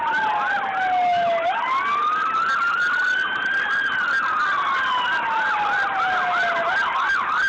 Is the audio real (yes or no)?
yes